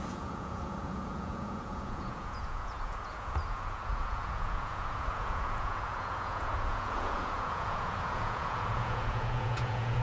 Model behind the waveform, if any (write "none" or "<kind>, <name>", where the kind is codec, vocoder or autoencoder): vocoder, Vocos